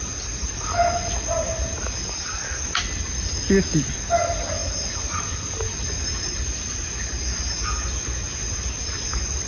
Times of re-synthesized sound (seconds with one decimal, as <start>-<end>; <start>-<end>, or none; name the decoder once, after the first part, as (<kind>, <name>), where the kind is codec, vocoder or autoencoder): none